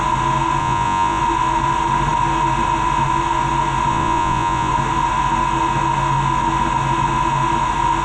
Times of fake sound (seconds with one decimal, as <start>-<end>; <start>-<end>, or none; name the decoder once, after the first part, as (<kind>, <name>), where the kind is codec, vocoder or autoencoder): 0.6-1.2 (vocoder, Vocos); 3.9-4.7